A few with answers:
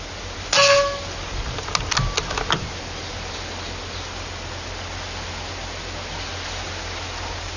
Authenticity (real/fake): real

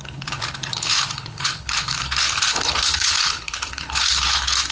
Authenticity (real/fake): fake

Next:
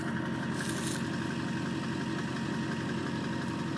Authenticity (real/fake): real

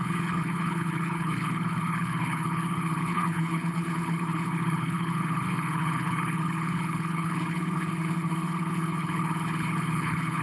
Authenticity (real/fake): fake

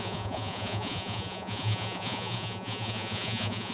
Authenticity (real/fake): fake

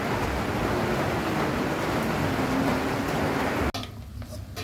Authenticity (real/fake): real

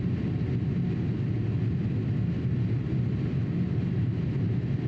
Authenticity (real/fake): real